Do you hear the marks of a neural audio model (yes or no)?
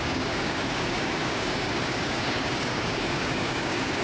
yes